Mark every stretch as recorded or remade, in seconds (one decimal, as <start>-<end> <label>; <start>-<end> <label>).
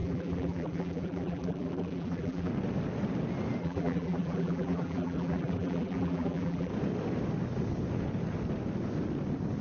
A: 0.0-2.5 remade; 2.5-3.6 recorded; 3.6-6.7 remade; 6.7-9.6 recorded